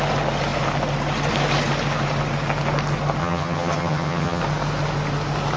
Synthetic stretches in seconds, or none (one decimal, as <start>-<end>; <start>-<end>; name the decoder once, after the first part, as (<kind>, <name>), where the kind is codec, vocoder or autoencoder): 3.2-4.4 (vocoder, HiFi-GAN)